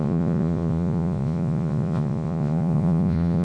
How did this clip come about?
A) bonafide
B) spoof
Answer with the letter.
B